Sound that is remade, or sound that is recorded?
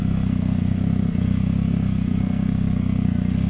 remade